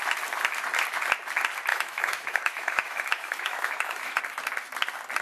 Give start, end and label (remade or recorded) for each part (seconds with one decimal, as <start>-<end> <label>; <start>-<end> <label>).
0.0-1.7 recorded; 1.7-4.2 remade; 4.2-5.2 recorded